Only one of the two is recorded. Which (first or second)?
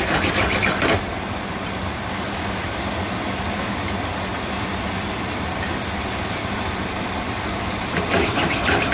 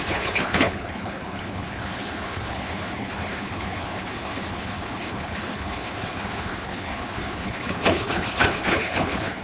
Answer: first